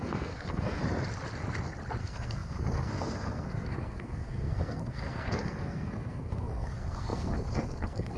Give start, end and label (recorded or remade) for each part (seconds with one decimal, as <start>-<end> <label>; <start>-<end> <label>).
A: 0.0-0.8 remade; 0.8-2.0 recorded; 2.0-8.2 remade